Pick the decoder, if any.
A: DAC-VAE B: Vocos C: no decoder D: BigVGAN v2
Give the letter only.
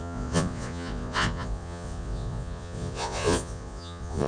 B